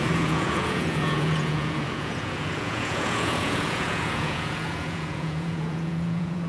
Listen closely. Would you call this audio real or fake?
fake